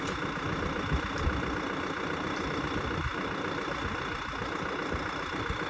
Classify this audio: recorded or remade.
recorded